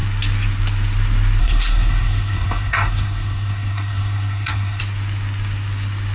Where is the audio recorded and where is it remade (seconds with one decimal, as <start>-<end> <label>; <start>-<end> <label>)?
0.0-1.4 recorded; 1.4-4.8 remade; 4.8-6.1 recorded